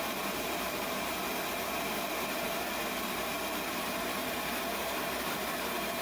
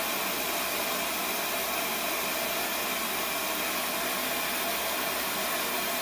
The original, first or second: second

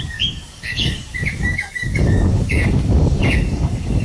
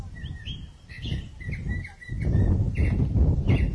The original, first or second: second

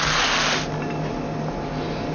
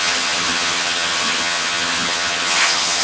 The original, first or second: first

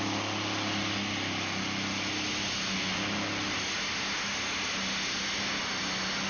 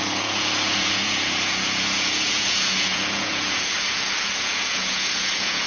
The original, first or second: first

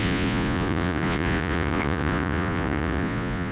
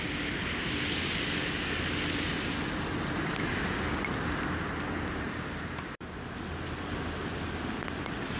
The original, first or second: second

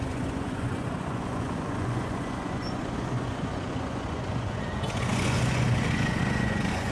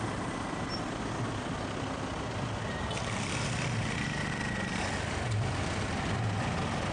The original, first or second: second